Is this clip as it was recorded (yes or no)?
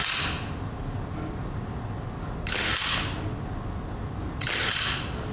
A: yes